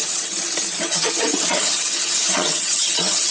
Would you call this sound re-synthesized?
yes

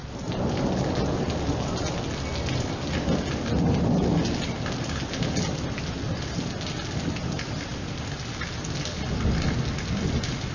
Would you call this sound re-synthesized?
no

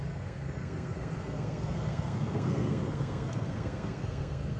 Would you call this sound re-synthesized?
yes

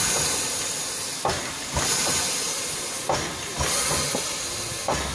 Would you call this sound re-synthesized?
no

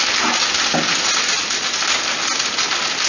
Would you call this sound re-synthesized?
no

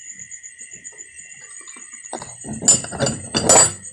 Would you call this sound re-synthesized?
no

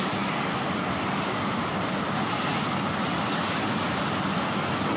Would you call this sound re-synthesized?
no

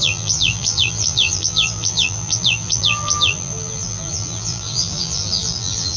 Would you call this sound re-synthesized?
yes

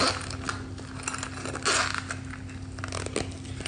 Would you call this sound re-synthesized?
no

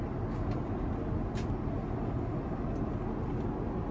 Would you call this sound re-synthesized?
no